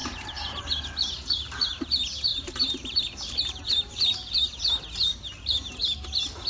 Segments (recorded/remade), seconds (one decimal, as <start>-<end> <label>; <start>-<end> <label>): 0.0-0.6 remade; 0.6-2.3 recorded; 2.3-4.5 remade; 4.5-6.5 recorded

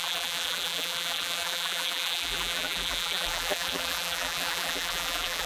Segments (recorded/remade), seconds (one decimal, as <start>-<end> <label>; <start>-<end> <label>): 0.0-5.5 remade